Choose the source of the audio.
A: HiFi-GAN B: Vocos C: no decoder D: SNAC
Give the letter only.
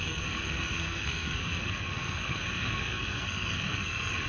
D